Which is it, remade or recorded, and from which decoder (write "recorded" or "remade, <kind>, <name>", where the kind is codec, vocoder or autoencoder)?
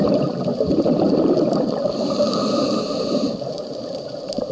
remade, vocoder, BigVGAN v2